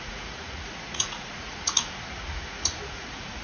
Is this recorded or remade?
remade